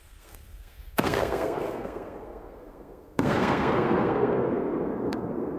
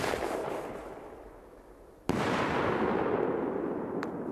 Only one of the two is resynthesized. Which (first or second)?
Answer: first